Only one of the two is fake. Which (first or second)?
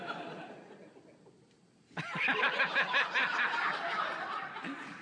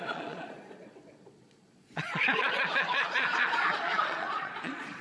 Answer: second